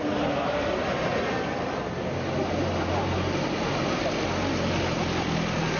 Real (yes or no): yes